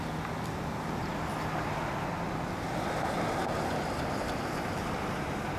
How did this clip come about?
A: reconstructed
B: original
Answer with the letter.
B